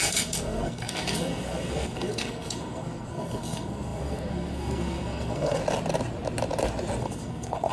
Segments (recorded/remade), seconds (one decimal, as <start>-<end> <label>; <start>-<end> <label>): 0.0-5.6 remade; 5.6-7.0 recorded; 7.0-7.7 remade